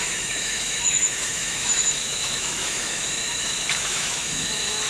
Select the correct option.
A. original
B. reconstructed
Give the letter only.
B